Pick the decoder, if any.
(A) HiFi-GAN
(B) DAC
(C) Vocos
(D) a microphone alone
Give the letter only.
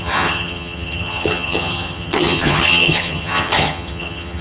A